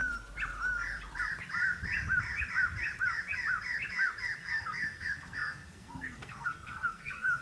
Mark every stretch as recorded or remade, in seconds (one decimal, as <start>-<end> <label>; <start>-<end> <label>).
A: 0.0-4.4 recorded; 4.4-7.4 remade